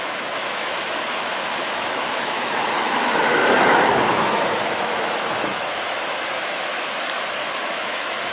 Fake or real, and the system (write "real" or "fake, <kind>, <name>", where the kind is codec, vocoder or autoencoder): fake, autoencoder, DAC-VAE